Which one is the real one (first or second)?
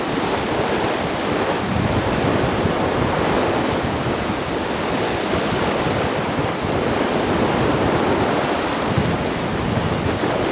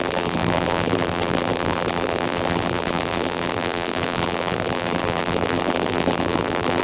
first